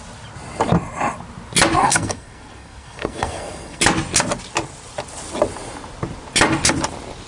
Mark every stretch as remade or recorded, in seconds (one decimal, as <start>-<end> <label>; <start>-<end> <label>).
0.0-1.8 recorded; 1.8-3.8 remade; 3.8-7.3 recorded